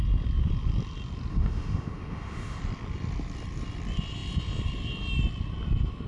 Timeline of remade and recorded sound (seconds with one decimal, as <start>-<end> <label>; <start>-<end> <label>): 0.0-1.3 recorded; 1.3-2.6 remade; 2.6-6.1 recorded